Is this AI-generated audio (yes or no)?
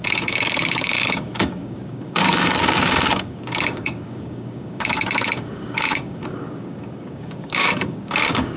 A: yes